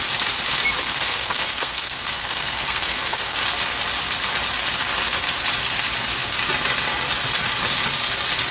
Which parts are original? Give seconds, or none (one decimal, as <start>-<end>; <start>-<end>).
0.0-0.8; 3.4-8.5